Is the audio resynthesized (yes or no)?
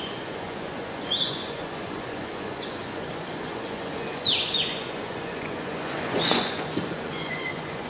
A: yes